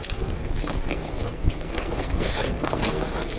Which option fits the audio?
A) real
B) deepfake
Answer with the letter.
B